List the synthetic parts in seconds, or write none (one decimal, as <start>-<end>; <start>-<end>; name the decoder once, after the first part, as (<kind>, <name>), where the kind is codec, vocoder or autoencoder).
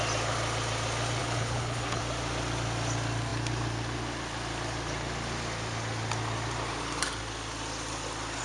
1.2-2.0 (codec, HILCodec)